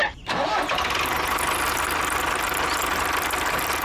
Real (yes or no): yes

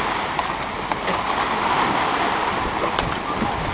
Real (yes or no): yes